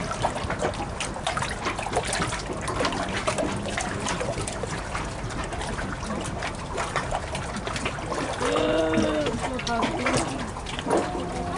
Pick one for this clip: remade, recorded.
recorded